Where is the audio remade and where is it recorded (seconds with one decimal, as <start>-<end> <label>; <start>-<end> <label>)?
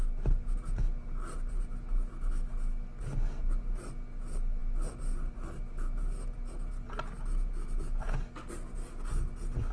0.0-9.7 recorded